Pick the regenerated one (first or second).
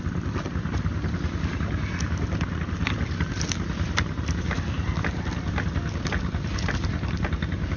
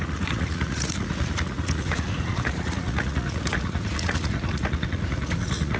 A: second